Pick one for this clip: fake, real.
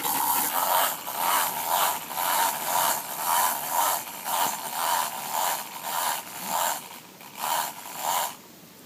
fake